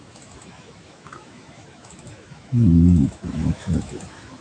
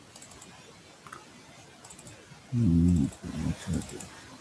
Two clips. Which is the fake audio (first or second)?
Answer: first